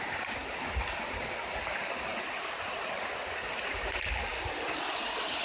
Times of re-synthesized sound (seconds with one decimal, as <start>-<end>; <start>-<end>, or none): none